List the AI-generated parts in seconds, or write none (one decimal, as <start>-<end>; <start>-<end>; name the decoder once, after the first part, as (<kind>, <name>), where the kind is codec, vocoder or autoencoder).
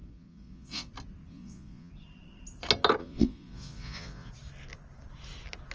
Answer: 0.0-0.9 (vocoder, Vocos); 1.3-1.9; 3.0-4.3